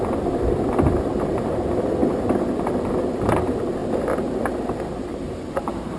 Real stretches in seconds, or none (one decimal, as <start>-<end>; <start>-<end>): 0.0-5.1